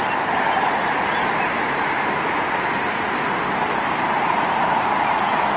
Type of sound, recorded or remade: remade